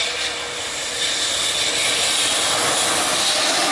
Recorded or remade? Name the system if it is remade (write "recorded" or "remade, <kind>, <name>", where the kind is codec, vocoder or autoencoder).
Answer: recorded